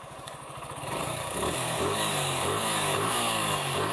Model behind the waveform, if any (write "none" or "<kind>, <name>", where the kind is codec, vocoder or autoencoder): codec, DAC